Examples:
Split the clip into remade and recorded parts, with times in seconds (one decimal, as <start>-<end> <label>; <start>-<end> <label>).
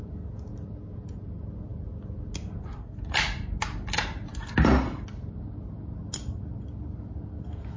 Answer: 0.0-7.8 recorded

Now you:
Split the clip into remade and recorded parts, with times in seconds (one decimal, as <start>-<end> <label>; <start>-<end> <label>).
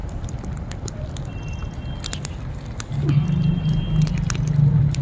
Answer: 0.0-1.6 remade; 1.6-4.6 recorded; 4.6-5.0 remade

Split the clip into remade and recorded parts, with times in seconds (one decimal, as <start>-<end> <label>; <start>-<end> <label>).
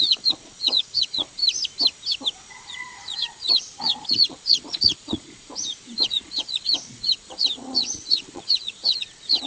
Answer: 0.0-1.4 remade; 1.4-2.5 recorded; 2.5-9.5 remade